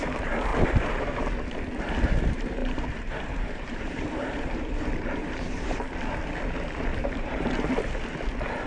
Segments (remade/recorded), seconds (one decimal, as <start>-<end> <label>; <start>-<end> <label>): 0.0-0.5 recorded; 0.5-1.3 remade; 1.3-2.6 recorded; 2.6-5.8 remade; 5.8-6.9 recorded; 6.9-7.5 remade; 7.5-8.7 recorded